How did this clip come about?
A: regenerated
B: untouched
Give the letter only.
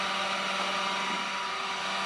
B